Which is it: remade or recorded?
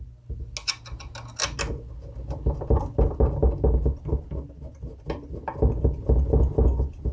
recorded